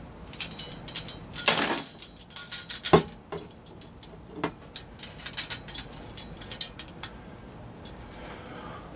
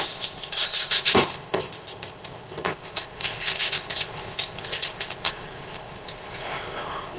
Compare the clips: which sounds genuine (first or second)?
first